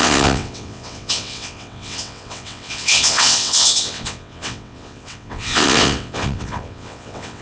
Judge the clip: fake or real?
fake